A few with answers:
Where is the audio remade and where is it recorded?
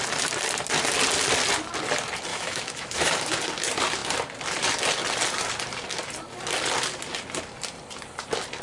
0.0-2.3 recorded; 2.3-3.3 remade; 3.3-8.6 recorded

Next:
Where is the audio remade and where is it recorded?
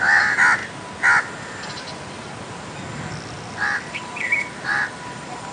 0.0-0.6 remade; 0.6-3.9 recorded; 3.9-5.5 remade